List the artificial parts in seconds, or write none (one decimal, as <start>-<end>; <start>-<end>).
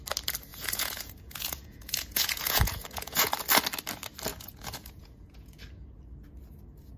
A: 0.5-3.3; 4.3-5.6